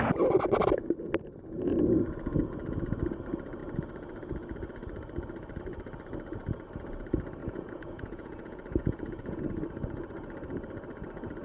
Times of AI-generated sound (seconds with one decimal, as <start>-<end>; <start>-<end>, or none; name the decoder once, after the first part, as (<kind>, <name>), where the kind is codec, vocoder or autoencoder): 7.4-9.4 (vocoder, Vocos)